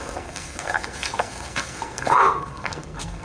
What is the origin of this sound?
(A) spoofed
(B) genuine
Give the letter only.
A